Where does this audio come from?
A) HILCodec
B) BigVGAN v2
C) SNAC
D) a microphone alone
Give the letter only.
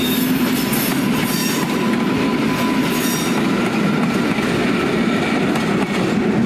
D